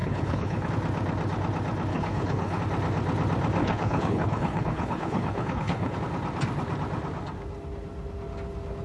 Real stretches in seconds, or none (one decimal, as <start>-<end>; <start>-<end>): 0.7-1.9; 2.6-3.6; 6.0-8.8